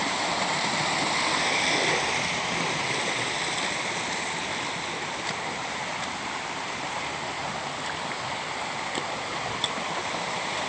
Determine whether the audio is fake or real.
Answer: real